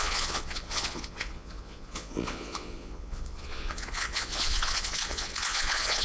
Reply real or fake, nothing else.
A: fake